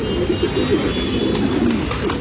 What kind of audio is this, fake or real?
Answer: real